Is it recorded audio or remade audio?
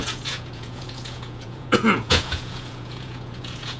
remade